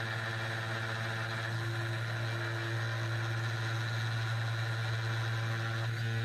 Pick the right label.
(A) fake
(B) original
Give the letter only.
B